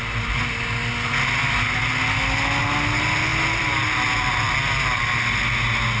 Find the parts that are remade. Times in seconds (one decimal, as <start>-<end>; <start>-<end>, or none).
none